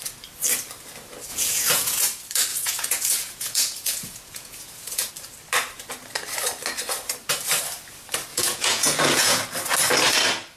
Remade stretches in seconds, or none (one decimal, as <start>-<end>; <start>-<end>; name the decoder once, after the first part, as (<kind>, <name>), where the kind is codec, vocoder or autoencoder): 1.3-2.0 (vocoder, Vocos); 2.5-5.1; 8.3-9.4